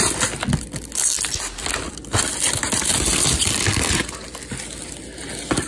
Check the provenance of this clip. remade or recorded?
recorded